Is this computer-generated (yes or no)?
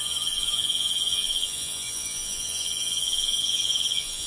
yes